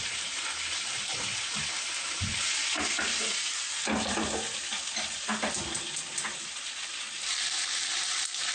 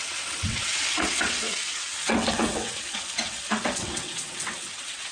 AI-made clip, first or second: second